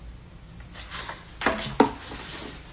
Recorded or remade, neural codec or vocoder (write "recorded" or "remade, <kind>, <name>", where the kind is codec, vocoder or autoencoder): recorded